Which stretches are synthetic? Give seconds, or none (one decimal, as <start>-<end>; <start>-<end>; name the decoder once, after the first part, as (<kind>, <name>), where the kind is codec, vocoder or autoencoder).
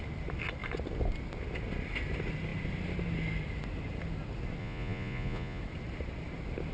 4.6-5.6 (vocoder, Vocos)